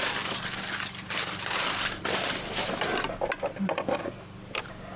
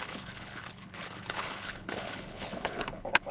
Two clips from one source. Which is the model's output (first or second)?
second